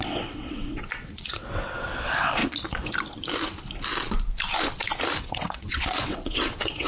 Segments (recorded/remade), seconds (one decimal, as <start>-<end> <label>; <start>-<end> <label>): 0.0-2.4 remade; 2.4-5.2 recorded; 5.2-6.9 remade